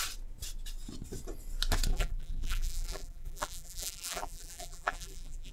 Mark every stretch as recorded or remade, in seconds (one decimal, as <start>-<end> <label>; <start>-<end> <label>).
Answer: 0.0-1.9 recorded; 1.9-5.5 remade